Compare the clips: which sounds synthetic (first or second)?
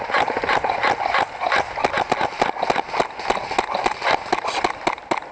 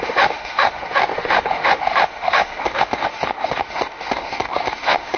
second